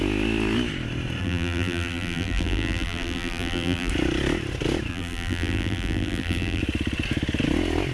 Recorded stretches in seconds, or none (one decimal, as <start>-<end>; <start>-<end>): 0.0-1.2; 3.9-4.9; 6.6-7.9